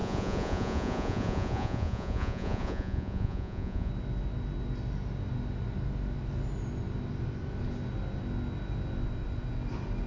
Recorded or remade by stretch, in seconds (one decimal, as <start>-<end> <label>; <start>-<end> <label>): 0.0-3.9 remade; 3.9-10.1 recorded